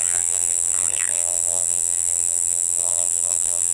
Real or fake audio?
fake